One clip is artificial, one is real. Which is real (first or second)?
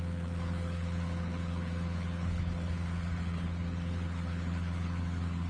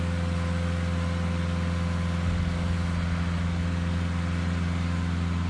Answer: second